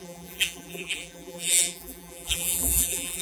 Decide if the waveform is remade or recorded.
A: remade